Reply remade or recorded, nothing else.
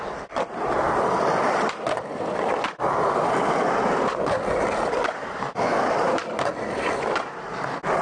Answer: recorded